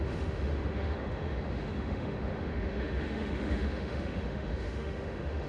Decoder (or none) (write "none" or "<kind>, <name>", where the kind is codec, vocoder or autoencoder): autoencoder, DAC-VAE